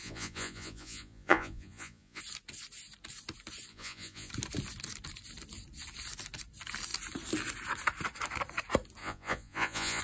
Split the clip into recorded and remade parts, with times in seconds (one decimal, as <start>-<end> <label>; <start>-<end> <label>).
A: 0.0-2.2 remade; 2.2-3.7 recorded; 3.7-4.3 remade; 4.3-9.0 recorded; 9.0-10.0 remade